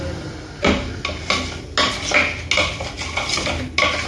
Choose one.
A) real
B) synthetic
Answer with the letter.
A